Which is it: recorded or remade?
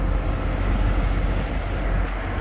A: recorded